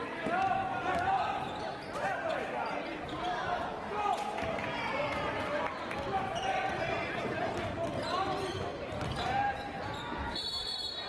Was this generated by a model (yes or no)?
yes